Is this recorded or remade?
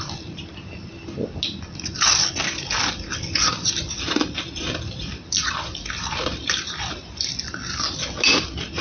recorded